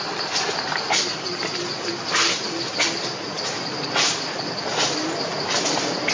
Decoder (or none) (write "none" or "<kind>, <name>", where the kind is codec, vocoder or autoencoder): none